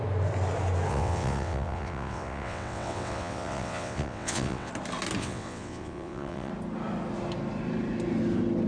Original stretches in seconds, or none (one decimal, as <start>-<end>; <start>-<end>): 0.0-0.9; 4.7-5.2; 6.5-8.7